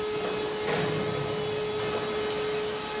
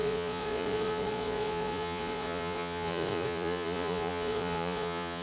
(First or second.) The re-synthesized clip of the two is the second